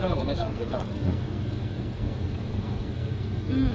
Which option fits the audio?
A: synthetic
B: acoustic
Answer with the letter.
A